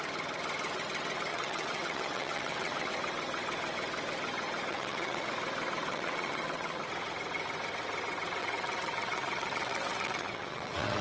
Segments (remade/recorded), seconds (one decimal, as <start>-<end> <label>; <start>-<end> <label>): 0.0-1.3 recorded; 1.3-2.9 remade; 2.9-4.7 recorded; 4.7-5.3 remade; 5.3-5.9 recorded; 5.9-6.8 remade; 6.8-8.4 recorded; 8.4-11.0 remade